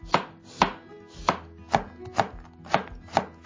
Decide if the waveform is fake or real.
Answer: real